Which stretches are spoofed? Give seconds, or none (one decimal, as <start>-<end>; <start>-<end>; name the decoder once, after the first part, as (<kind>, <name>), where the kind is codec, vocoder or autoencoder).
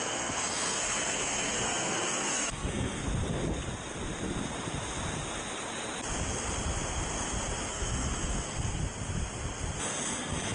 0.0-3.0 (codec, SNAC); 7.7-8.8; 9.8-10.5